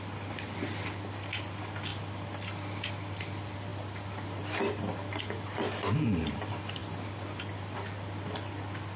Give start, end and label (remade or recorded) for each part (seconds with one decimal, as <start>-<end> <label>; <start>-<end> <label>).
0.0-3.7 remade; 3.7-4.4 recorded; 4.4-6.8 remade; 6.8-7.4 recorded; 7.4-9.0 remade